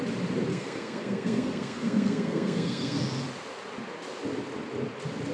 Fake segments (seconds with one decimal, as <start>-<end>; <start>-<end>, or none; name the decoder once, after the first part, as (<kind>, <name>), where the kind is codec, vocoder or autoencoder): 0.5-3.0 (codec, SNAC)

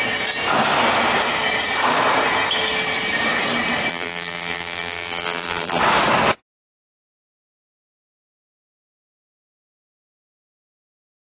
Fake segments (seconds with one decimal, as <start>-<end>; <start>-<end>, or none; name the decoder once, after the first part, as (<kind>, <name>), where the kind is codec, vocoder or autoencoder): 3.9-5.8 (vocoder, BigVGAN v2)

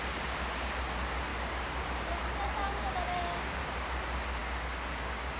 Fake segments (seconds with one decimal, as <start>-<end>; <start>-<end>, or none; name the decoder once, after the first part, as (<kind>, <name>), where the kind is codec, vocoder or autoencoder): 1.3-2.1 (codec, DAC); 2.6-3.6; 4.4-5.4

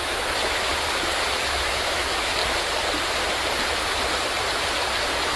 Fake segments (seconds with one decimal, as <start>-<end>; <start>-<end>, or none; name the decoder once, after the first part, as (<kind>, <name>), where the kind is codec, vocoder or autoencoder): 0.0-0.7 (autoencoder, DAC-VAE); 1.4-2.4

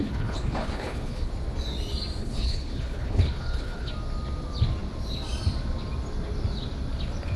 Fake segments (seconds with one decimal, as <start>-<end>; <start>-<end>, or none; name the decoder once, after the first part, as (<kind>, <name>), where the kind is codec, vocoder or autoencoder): 0.0-1.3 (codec, HILCodec); 2.2-3.9

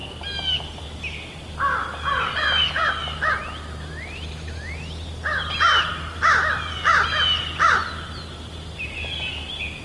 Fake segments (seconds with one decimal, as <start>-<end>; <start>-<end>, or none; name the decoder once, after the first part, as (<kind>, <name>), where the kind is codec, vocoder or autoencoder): none

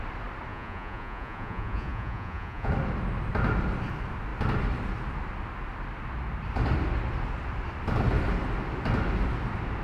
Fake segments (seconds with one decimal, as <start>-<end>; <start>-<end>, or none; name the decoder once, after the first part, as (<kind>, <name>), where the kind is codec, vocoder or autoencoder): 0.5-2.7 (vocoder, Vocos)